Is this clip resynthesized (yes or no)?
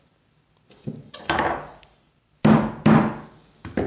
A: no